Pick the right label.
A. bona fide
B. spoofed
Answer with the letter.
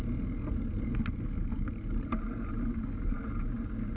A